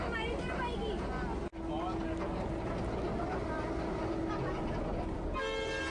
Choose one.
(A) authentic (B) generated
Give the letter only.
A